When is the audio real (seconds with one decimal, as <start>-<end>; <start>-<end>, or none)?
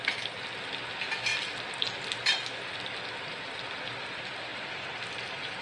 0.0-5.6